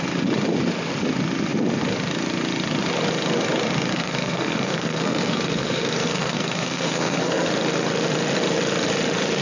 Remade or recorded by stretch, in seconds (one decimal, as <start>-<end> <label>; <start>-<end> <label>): 0.0-3.9 recorded; 3.9-7.5 remade; 7.5-9.4 recorded